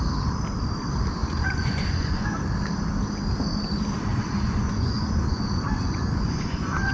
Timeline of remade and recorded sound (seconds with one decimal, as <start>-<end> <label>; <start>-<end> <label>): 0.0-1.2 recorded; 1.2-2.4 remade; 2.4-4.1 recorded; 4.1-6.9 remade